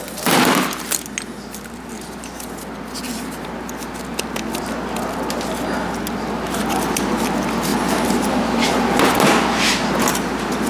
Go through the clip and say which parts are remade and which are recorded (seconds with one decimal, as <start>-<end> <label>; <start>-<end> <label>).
0.0-10.7 recorded